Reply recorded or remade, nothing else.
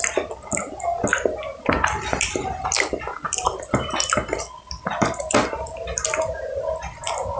recorded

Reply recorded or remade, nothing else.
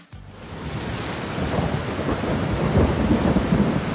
recorded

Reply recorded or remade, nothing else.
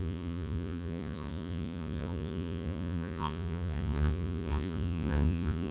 remade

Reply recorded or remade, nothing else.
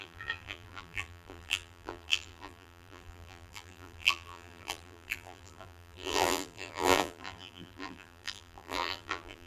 remade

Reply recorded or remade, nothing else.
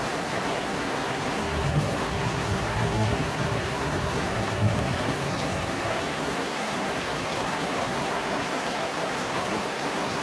remade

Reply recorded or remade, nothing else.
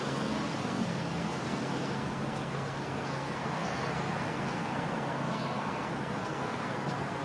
remade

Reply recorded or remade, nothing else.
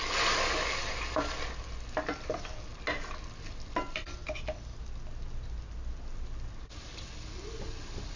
recorded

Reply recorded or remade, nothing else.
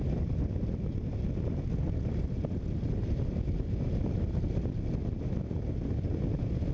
recorded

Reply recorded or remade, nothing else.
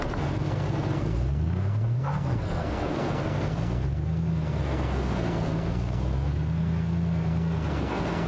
remade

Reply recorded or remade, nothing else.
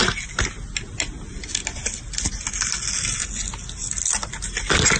recorded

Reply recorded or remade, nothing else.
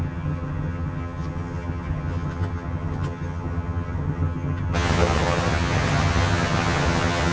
remade